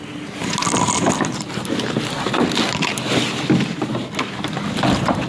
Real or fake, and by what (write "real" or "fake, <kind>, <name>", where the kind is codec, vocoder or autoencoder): real